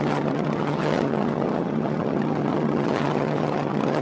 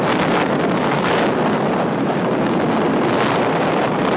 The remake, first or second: first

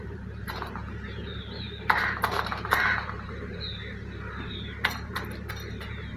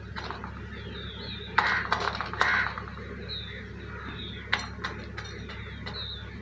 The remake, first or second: first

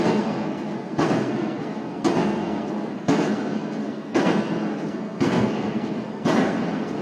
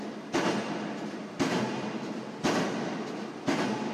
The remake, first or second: first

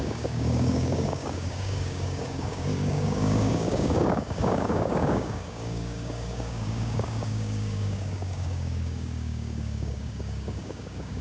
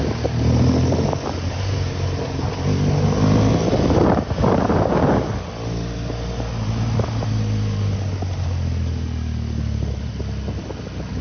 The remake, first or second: first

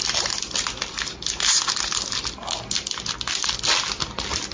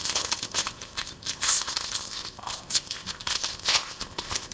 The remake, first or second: second